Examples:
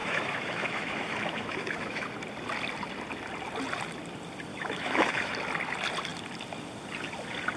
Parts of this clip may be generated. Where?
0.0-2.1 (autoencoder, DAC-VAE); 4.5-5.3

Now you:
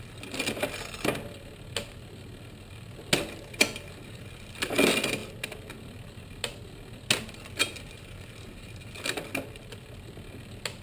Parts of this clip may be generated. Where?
none

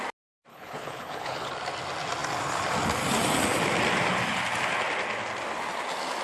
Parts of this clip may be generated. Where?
0.5-1.5 (codec, HILCodec)

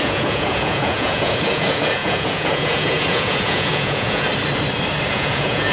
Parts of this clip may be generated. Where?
0.0-4.3 (vocoder, Vocos); 5.1-5.7